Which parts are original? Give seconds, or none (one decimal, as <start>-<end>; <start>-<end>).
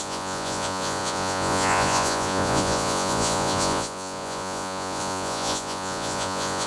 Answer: none